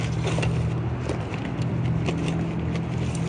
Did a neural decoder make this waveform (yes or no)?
no